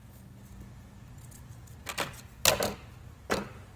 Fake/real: real